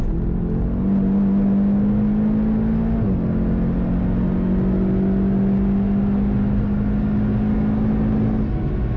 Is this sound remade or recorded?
recorded